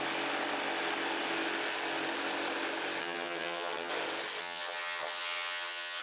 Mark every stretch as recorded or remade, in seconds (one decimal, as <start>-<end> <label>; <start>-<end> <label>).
0.0-3.0 recorded; 3.0-3.9 remade; 3.9-4.4 recorded; 4.4-6.0 remade

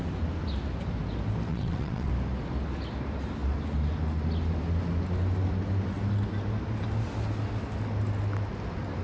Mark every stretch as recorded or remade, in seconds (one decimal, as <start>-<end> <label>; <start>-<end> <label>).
0.0-1.5 recorded; 1.5-2.1 remade; 2.1-9.0 recorded

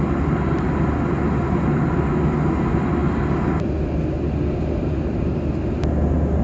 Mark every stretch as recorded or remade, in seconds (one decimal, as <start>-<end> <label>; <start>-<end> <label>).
0.0-6.4 recorded

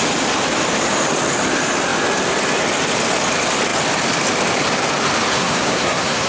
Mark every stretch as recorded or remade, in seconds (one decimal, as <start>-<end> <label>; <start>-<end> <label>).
0.0-5.3 recorded; 5.3-6.3 remade